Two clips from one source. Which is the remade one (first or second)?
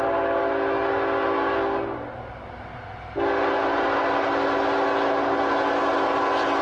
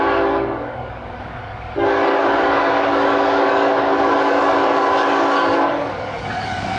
second